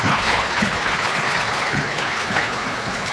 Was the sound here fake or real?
fake